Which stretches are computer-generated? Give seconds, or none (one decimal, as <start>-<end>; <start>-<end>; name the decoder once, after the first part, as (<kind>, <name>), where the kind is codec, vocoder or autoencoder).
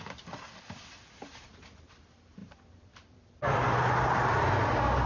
2.4-4.5 (vocoder, BigVGAN v2)